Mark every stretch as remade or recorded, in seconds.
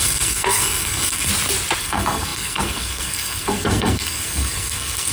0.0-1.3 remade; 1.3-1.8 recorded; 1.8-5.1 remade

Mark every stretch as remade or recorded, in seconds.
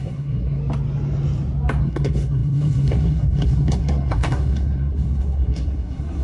0.0-0.6 remade; 0.6-1.8 recorded; 1.8-6.2 remade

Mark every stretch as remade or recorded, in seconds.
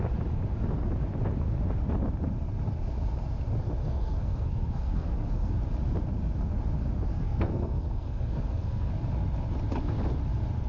0.0-3.8 recorded; 3.8-5.5 remade; 5.5-7.1 recorded; 7.1-8.9 remade; 8.9-10.7 recorded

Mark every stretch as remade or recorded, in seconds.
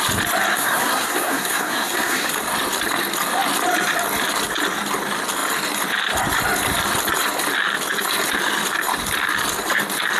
0.0-0.5 recorded; 0.5-2.3 remade; 2.3-10.2 recorded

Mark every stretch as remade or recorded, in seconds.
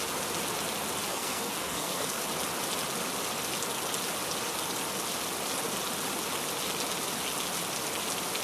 0.0-1.1 recorded; 1.1-2.2 remade; 2.2-8.4 recorded